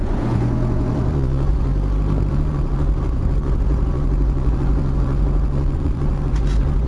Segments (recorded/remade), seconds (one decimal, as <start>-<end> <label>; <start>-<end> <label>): 0.0-1.7 remade; 1.7-2.3 recorded; 2.3-6.9 remade